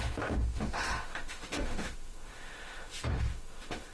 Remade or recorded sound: remade